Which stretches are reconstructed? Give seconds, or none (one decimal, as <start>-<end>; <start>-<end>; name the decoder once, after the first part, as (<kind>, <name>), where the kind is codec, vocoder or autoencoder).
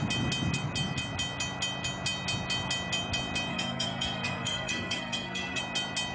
3.5-5.6 (codec, SNAC)